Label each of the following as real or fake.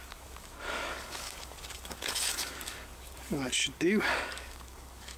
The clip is fake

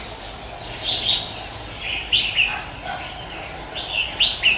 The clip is real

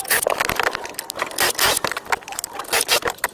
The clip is real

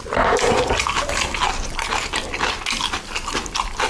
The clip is real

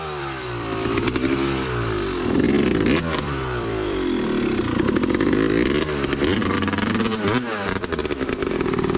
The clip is fake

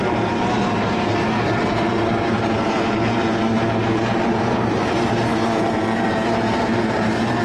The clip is fake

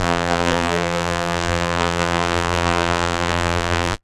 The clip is fake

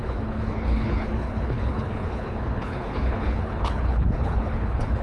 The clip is fake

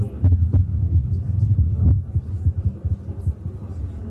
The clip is real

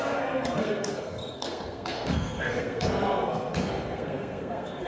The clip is fake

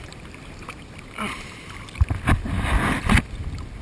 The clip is real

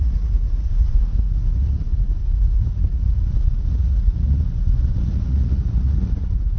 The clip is fake